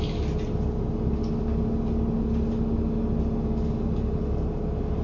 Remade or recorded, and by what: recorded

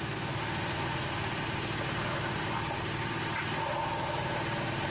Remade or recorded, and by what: recorded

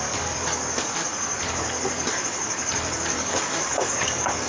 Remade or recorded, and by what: remade, codec, DAC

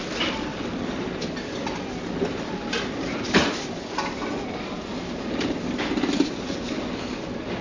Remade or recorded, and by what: recorded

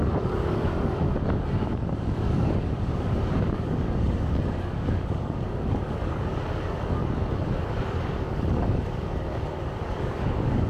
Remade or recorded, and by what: remade, codec, DAC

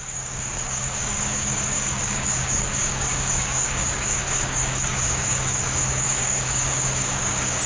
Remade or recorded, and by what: remade, codec, DAC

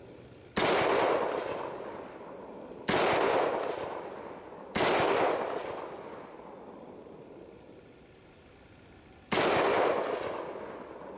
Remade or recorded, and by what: recorded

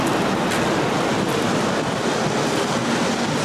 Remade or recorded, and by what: recorded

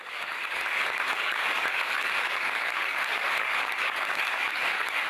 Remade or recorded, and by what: remade, codec, DAC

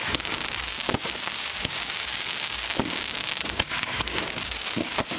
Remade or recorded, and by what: remade, codec, DAC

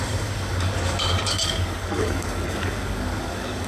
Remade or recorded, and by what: remade, codec, DAC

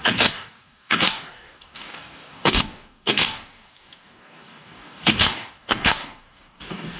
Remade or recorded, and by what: remade, codec, DAC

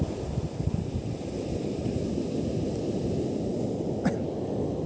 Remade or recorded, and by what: recorded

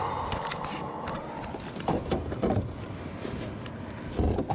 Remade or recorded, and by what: recorded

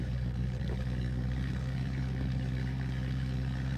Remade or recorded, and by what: remade, codec, DAC